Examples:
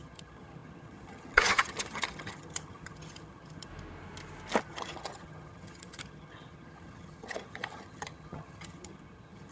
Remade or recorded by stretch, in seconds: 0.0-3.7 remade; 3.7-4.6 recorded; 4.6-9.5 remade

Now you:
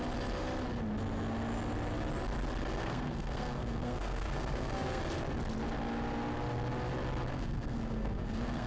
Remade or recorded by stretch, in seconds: 0.0-2.8 recorded; 2.8-5.0 remade; 5.0-7.3 recorded; 7.3-8.7 remade

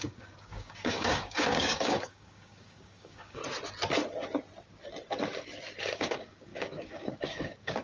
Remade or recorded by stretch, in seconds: 0.0-3.4 remade; 3.4-5.8 recorded; 5.8-7.8 remade

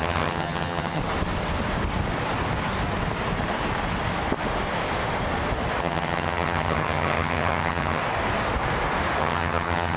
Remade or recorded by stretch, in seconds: 0.0-1.0 remade; 1.0-5.8 recorded; 5.8-8.0 remade; 8.0-9.2 recorded; 9.2-10.0 remade

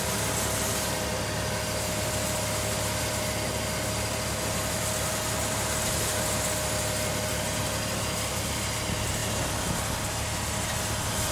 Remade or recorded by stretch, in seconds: 0.0-11.3 recorded

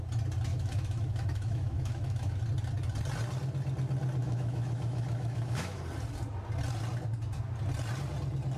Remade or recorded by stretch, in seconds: 0.0-0.5 recorded; 0.5-2.4 remade; 2.4-4.2 recorded; 4.2-5.8 remade; 5.8-8.6 recorded